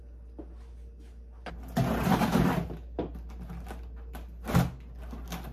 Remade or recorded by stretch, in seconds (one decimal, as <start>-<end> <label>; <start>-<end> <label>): 0.0-5.5 recorded